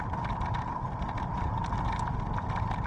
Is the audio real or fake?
real